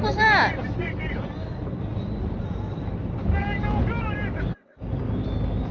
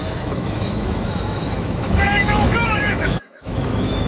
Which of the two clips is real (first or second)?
first